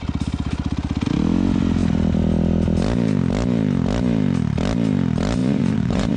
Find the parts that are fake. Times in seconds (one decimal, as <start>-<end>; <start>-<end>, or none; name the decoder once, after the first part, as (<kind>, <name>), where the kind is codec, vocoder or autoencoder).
5.4-6.2 (vocoder, Vocos)